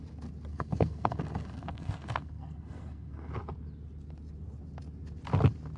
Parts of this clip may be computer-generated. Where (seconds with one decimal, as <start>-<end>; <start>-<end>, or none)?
0.5-3.3